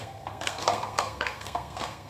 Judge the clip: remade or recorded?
remade